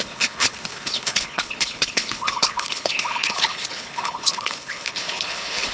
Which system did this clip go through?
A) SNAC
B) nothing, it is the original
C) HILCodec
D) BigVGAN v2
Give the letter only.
C